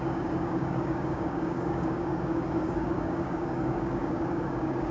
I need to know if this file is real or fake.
fake